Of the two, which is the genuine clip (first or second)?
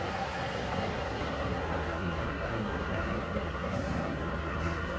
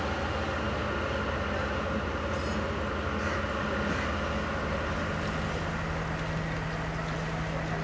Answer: second